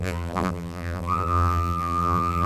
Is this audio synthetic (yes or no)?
yes